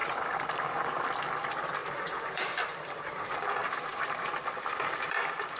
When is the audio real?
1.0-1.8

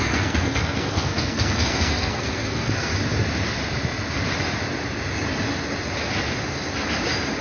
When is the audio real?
2.9-7.4

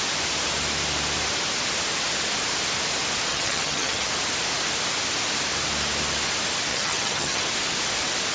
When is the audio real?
0.0-3.3; 4.1-6.7; 7.4-8.3

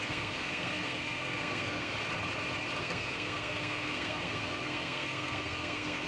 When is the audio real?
1.9-2.8

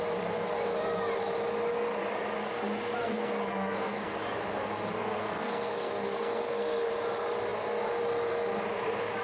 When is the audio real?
0.0-3.0; 4.2-5.2; 6.9-9.2

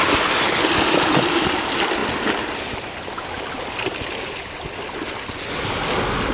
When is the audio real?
0.0-6.3